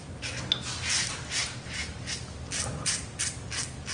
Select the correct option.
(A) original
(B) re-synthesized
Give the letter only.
A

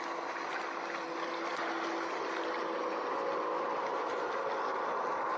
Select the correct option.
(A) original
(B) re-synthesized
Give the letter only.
A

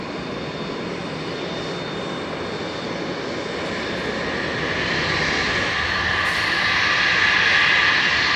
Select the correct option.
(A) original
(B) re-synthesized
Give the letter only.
A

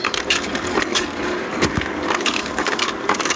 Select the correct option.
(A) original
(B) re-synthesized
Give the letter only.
B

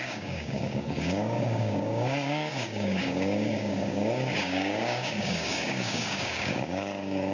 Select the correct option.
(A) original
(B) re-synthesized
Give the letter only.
B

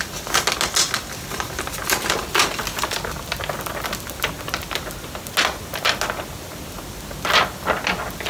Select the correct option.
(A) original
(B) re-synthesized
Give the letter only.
A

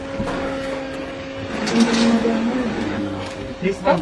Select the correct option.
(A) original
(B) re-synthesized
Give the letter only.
B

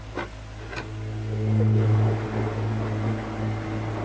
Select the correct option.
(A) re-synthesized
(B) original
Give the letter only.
B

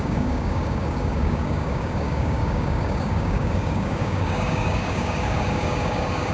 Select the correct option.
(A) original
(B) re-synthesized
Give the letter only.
B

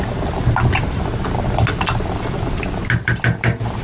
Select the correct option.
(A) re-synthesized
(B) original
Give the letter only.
B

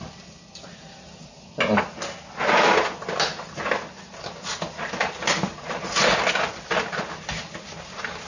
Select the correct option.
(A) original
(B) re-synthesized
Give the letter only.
A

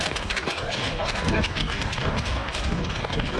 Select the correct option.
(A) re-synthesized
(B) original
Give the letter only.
A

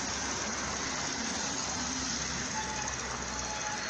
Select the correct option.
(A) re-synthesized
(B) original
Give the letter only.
B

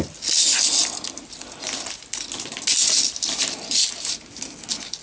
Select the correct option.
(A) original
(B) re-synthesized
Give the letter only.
A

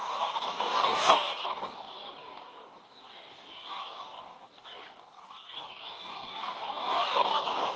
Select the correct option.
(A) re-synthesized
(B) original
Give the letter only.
A